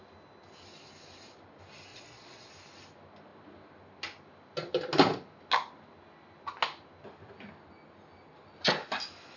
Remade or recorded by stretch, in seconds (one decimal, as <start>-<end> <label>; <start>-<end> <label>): 0.0-1.9 recorded; 1.9-2.5 remade; 2.5-9.4 recorded